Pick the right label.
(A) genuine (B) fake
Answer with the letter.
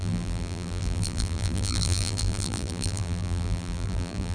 B